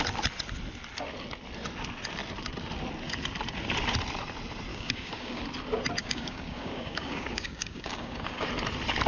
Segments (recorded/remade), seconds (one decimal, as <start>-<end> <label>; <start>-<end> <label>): 0.0-4.7 recorded; 4.7-5.4 remade; 5.4-6.0 recorded; 6.0-8.5 remade; 8.5-9.1 recorded